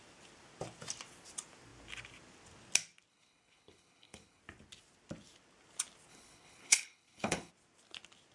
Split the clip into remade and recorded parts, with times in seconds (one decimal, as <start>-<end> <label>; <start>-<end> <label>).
0.0-3.1 recorded; 3.1-4.4 remade; 4.4-6.1 recorded; 6.1-7.5 remade; 7.5-8.3 recorded